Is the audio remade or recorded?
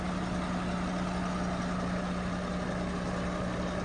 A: recorded